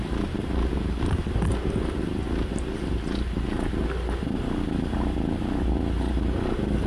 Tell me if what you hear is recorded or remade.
recorded